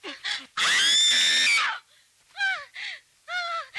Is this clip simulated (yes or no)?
no